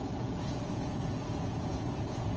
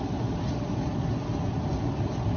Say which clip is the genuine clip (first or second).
second